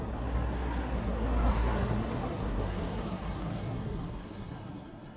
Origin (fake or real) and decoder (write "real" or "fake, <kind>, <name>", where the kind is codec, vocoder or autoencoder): fake, codec, SNAC